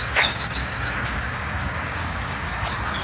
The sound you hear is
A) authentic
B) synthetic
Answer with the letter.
B